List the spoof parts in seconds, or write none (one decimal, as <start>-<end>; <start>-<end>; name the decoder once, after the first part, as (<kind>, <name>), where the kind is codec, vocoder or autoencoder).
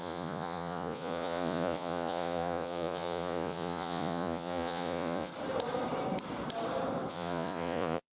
0.0-5.3 (vocoder, Vocos); 7.1-8.1